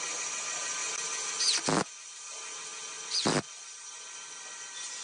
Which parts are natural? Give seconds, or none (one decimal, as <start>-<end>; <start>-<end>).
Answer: 0.0-5.0